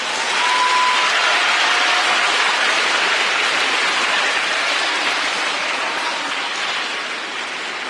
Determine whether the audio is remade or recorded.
recorded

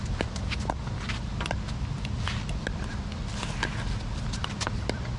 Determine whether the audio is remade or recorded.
recorded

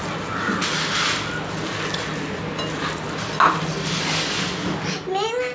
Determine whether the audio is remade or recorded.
recorded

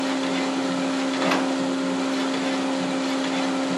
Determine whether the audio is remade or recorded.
recorded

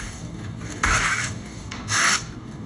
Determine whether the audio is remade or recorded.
remade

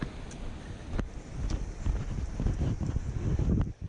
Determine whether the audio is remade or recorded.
recorded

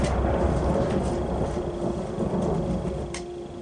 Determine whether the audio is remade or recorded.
recorded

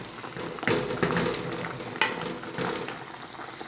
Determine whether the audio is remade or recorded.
recorded